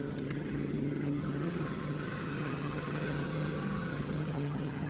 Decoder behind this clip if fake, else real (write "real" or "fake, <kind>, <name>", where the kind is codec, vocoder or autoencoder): fake, vocoder, HiFi-GAN